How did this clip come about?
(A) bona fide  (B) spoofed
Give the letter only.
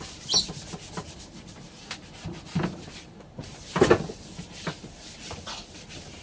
A